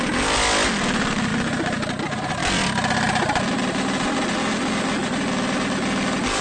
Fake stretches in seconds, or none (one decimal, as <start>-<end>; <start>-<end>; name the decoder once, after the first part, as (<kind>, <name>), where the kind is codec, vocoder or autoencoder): none